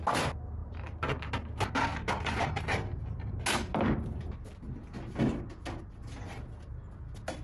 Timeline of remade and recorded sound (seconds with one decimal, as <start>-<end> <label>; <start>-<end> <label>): 0.0-0.6 recorded; 0.6-1.3 remade; 1.3-7.4 recorded